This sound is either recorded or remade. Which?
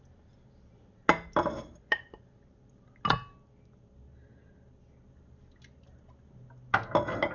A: recorded